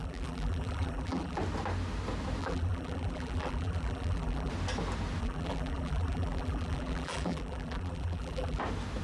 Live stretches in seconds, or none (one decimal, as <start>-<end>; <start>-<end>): 1.4-2.4; 4.5-5.2; 8.6-9.0